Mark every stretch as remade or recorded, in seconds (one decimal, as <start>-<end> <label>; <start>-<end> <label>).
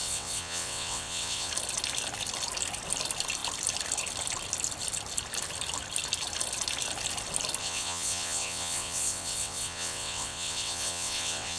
0.0-1.5 remade; 1.5-7.6 recorded; 7.6-11.6 remade